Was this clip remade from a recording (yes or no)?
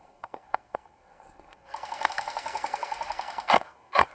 yes